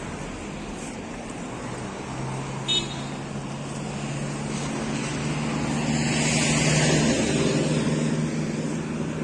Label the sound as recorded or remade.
recorded